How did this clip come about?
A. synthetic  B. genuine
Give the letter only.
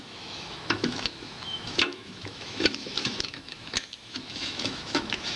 A